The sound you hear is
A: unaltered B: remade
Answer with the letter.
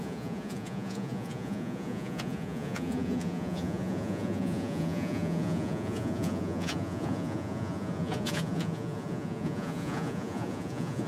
B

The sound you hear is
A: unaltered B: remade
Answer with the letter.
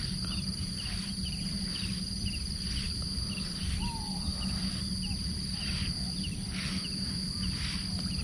A